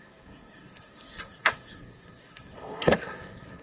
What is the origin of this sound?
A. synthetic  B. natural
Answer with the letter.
A